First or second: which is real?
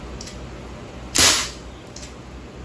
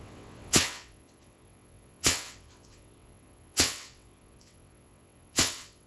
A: first